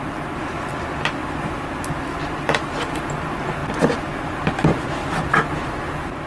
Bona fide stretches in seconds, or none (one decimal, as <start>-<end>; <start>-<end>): 0.0-1.2; 3.0-5.0